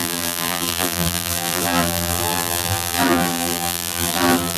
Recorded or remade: remade